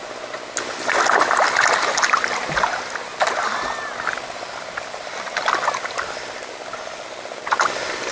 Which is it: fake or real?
real